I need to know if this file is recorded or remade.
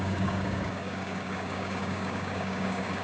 remade